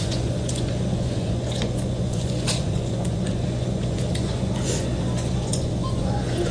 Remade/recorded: remade